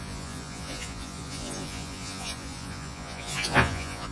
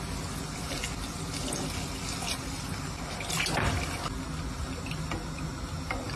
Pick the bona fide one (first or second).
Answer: second